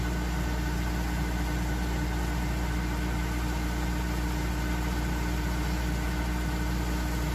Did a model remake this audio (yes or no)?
no